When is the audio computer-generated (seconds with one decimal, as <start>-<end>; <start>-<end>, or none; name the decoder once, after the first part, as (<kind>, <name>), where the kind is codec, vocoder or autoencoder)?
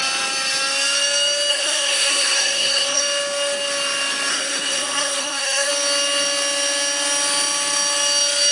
1.5-3.0 (codec, SNAC); 4.3-5.7